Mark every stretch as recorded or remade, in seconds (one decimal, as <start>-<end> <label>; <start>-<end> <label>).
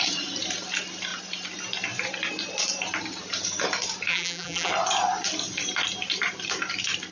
0.0-4.1 recorded; 4.1-4.7 remade; 4.7-7.1 recorded